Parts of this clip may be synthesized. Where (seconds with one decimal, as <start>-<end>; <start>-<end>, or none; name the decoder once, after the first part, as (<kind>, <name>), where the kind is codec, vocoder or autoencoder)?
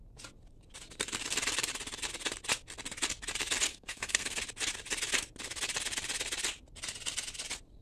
3.7-4.4 (codec, SNAC)